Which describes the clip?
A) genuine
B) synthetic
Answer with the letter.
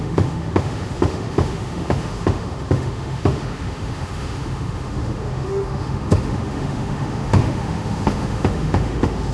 B